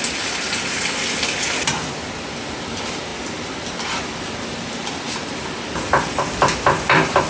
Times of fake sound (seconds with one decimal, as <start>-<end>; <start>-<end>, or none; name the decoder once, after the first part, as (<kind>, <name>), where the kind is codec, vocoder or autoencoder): none